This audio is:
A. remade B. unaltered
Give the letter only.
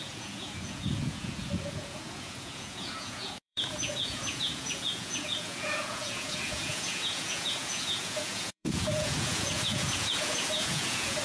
A